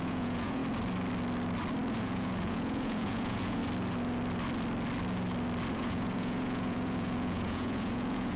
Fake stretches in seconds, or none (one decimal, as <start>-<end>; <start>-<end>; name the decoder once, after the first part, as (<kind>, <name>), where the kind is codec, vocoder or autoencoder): 0.0-0.6 (vocoder, Vocos); 2.0-3.6; 5.7-8.4